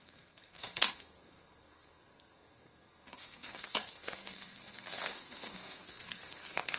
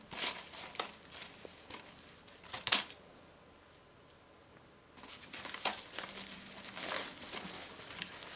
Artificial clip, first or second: first